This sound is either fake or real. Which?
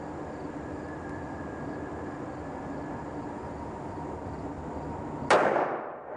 real